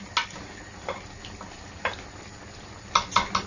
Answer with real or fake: real